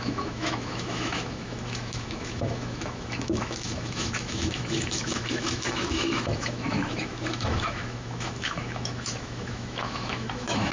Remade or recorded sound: remade